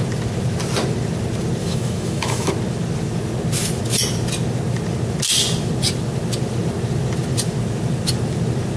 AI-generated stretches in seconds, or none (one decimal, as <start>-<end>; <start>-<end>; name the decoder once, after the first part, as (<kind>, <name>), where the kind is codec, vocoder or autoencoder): 1.6-2.5 (autoencoder, DAC-VAE)

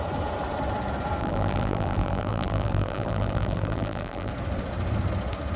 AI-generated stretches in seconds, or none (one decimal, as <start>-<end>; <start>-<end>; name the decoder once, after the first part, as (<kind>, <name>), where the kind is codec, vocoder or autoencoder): 1.2-4.3 (vocoder, BigVGAN v2)